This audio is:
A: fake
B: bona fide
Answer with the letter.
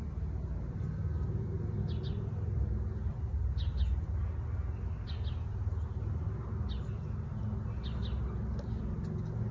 B